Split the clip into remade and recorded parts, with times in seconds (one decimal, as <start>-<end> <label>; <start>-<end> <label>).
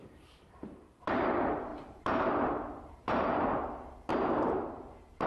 0.0-3.5 remade; 3.5-4.1 recorded; 4.1-5.3 remade